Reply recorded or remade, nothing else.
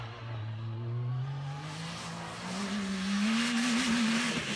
recorded